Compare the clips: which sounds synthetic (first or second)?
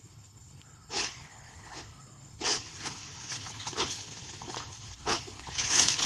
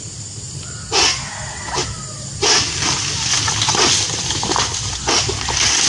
first